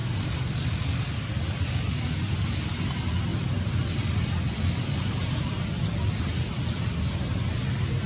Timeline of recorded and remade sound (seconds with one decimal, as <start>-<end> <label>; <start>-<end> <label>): 0.0-8.1 recorded